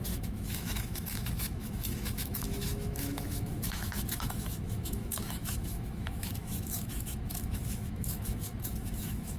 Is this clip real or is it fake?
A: fake